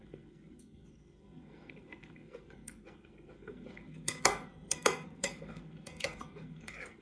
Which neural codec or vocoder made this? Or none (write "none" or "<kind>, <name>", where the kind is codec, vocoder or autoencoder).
codec, SNAC